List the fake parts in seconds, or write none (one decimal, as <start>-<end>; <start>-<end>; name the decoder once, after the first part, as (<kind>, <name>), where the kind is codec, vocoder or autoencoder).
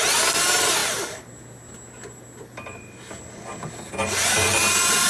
none